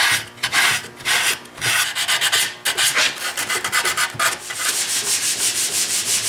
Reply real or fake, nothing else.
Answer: real